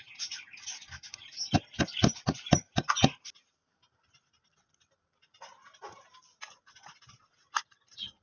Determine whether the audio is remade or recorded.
recorded